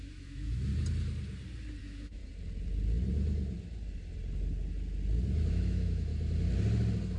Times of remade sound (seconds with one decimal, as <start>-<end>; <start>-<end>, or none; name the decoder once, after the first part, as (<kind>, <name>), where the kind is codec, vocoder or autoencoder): 0.0-0.7 (autoencoder, DAC-VAE); 1.8-2.2; 5.5-6.1